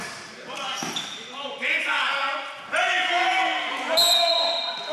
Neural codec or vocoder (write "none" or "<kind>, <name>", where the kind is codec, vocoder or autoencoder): none